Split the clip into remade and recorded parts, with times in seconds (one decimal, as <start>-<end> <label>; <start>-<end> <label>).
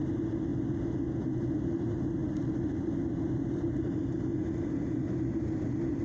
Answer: 0.0-2.2 recorded; 2.2-3.9 remade; 3.9-6.0 recorded